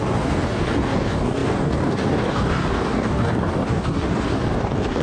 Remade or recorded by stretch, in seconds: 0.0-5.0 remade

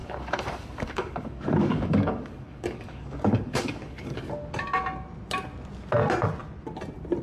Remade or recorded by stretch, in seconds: 0.0-4.3 remade; 4.3-7.2 recorded

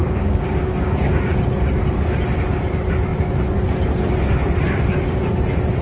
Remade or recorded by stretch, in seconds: 0.0-1.4 remade; 1.4-5.8 recorded

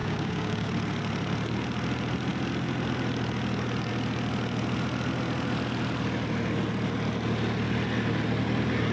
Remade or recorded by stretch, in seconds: 0.0-0.7 remade; 0.7-8.9 recorded